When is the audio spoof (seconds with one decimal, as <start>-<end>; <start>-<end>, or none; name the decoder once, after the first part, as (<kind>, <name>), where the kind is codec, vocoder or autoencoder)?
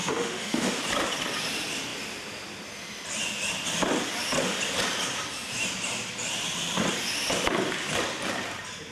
0.0-0.8 (autoencoder, DAC-VAE)